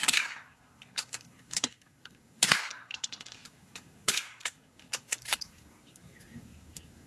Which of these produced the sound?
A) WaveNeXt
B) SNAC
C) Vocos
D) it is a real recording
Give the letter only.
B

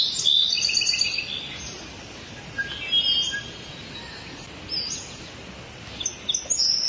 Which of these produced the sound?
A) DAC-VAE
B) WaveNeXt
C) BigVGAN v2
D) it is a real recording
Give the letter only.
D